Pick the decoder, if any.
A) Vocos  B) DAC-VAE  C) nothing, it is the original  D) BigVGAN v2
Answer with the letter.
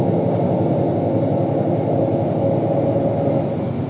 C